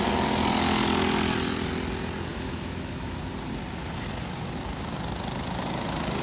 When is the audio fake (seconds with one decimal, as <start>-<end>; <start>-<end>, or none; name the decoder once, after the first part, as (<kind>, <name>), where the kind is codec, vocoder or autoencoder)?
2.3-3.2 (autoencoder, DAC-VAE)